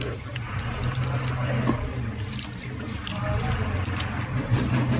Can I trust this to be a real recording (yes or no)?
yes